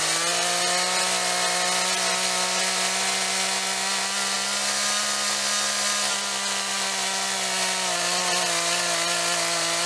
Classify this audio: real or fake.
real